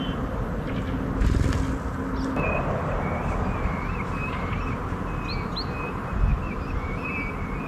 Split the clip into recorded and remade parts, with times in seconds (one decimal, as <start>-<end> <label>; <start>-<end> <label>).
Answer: 0.0-7.7 recorded